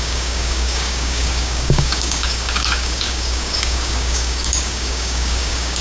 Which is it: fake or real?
fake